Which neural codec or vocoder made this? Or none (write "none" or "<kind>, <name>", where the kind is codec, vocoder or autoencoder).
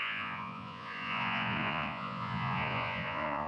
vocoder, Vocos